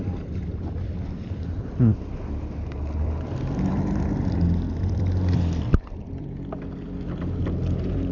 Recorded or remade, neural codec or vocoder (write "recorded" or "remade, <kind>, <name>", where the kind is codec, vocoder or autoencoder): remade, vocoder, BigVGAN v2